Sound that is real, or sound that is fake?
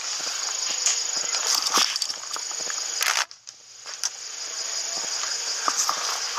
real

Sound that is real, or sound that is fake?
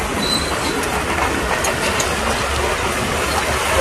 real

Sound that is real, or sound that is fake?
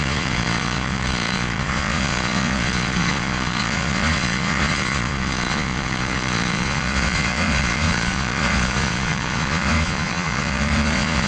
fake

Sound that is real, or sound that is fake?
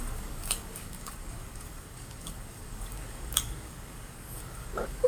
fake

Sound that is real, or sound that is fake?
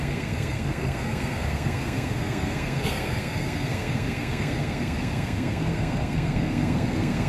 fake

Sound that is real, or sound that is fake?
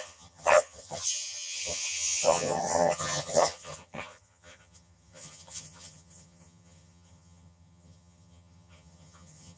fake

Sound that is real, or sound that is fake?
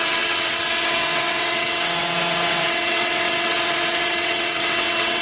fake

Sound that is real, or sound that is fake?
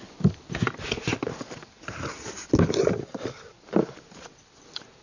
real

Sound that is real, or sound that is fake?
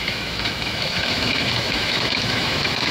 fake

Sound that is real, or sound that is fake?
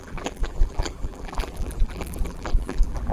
fake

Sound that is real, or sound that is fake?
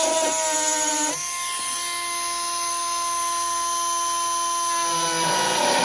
real